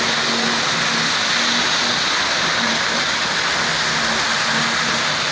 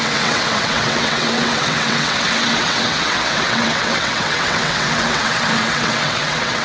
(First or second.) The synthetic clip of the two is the second